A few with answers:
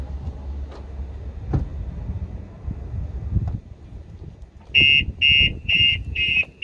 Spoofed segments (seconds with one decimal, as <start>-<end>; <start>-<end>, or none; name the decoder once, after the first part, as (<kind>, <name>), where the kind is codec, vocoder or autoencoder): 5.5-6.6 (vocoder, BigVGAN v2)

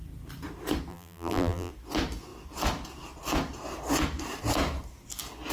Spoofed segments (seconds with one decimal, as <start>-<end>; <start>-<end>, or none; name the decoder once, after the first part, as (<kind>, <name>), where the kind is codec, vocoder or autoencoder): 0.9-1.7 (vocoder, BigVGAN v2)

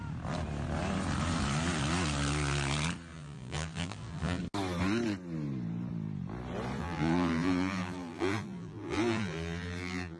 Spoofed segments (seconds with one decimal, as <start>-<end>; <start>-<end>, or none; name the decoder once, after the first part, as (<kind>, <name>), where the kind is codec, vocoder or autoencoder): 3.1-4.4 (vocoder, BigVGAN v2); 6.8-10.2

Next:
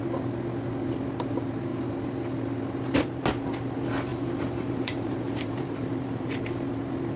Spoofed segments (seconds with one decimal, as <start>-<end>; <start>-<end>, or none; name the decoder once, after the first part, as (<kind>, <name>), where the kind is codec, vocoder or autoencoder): 4.1-6.4 (vocoder, BigVGAN v2)

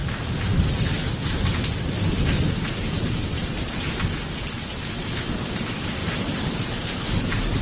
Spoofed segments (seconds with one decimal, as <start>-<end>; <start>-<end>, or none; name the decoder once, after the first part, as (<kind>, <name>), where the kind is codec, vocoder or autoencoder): 6.0-6.6 (vocoder, BigVGAN v2)